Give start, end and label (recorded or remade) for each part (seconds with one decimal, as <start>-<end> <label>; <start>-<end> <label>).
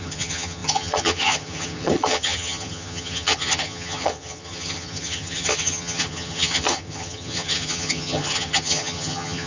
0.0-9.5 remade